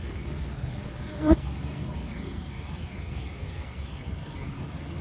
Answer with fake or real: fake